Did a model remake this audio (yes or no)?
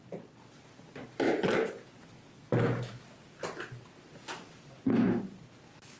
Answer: no